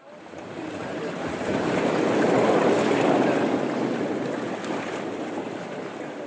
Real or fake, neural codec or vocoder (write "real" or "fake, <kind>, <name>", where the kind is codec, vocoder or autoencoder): real